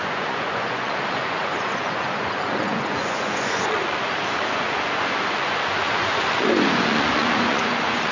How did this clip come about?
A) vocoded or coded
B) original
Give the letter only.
A